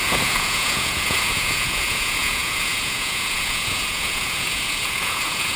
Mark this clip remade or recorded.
remade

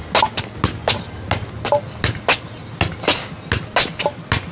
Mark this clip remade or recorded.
recorded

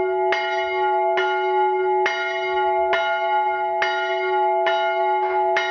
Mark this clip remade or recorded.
recorded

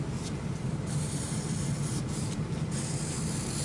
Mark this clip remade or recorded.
remade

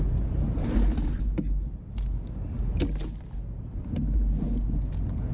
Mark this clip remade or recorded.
recorded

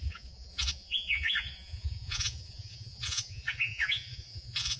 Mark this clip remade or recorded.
remade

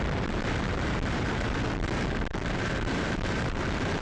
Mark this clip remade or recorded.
remade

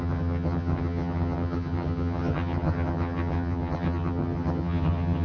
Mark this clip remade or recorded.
remade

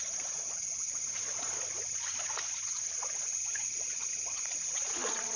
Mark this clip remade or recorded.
remade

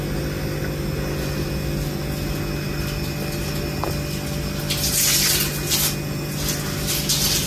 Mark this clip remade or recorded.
recorded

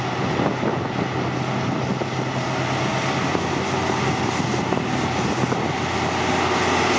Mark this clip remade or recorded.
recorded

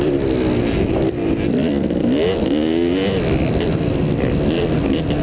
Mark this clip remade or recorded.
recorded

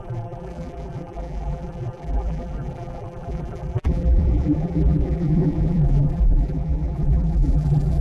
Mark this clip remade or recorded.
remade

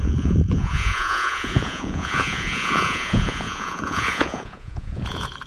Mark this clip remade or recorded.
remade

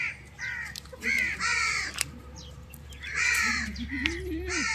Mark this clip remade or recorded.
remade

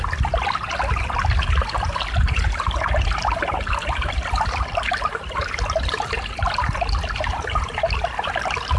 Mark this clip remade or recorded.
recorded